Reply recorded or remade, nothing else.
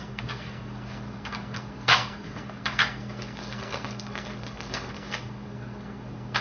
remade